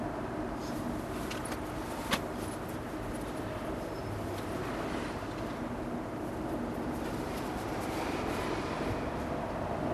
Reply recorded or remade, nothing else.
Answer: recorded